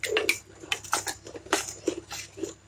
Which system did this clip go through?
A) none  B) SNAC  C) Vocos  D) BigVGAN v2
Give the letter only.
A